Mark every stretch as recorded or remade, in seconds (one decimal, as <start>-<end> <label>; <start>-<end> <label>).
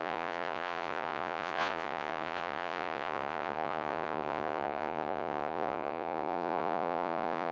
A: 0.0-7.5 remade